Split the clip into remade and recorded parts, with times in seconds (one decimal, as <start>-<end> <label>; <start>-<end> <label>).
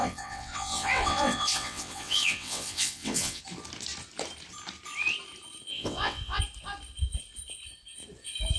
0.0-3.4 remade; 3.4-5.7 recorded; 5.7-6.4 remade; 6.4-8.6 recorded